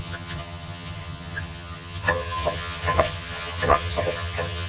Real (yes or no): no